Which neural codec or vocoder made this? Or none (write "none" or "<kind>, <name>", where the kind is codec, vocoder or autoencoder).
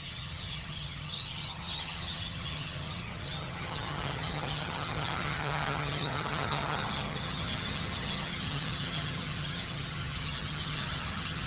vocoder, HiFi-GAN